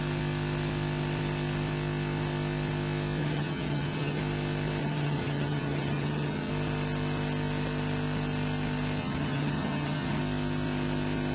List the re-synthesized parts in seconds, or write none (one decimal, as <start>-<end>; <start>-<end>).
3.2-4.2; 4.8-6.5; 9.0-10.2